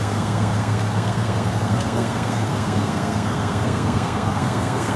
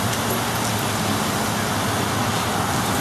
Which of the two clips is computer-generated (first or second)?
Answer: first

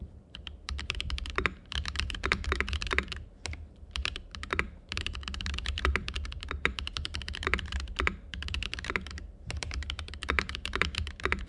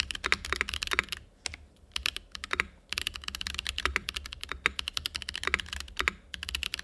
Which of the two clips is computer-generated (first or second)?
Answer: first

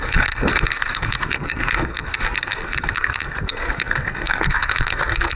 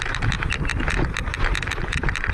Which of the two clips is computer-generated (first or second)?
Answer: first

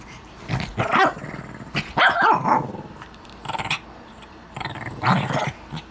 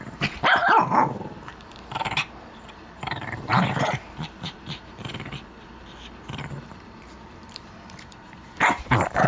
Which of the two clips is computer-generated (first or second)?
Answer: second